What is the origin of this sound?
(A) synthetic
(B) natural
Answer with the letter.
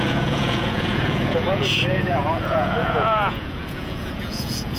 A